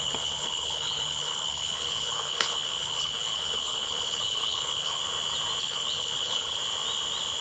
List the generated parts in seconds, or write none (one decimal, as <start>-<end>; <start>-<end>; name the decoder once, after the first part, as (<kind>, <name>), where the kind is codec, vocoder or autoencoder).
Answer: 0.0-5.0 (codec, HILCodec); 5.6-6.6